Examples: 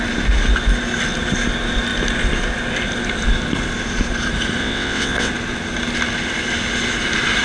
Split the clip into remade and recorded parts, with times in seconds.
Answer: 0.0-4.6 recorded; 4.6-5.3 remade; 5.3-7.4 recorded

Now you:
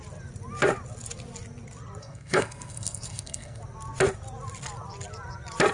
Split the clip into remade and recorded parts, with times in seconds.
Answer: 0.0-2.0 recorded; 2.0-3.6 remade; 3.6-5.7 recorded

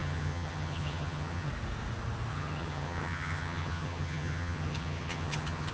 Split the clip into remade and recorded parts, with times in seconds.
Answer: 0.0-1.5 remade; 1.5-2.3 recorded; 2.3-5.7 remade